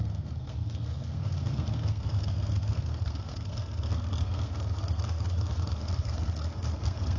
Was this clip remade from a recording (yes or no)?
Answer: yes